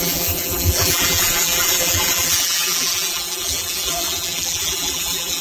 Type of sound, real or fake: fake